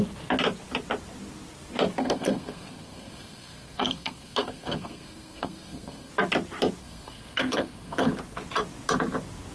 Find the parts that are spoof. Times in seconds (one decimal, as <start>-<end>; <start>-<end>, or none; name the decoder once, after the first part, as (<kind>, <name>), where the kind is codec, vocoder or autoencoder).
2.0-6.1 (codec, SNAC); 6.8-8.1